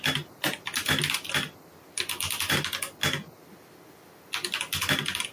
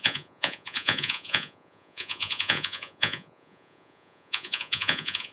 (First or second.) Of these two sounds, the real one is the first